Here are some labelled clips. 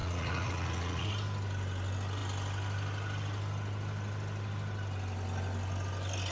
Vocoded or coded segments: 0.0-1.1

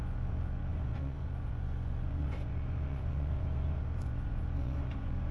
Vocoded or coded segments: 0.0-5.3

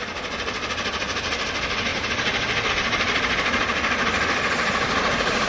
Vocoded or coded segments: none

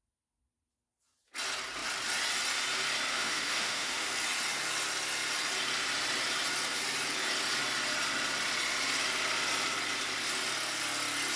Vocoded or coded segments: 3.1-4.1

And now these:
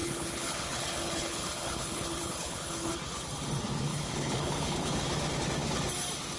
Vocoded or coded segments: 0.0-2.9; 3.9-5.0

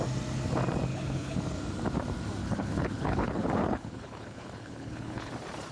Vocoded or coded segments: 0.9-1.4; 2.4-5.3

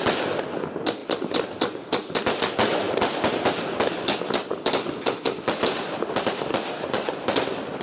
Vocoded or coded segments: none

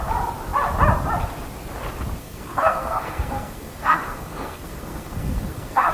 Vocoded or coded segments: 2.2-5.9